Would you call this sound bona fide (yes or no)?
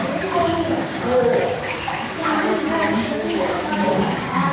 no